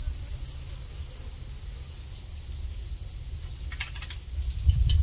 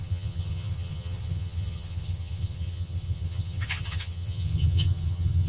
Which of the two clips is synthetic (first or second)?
second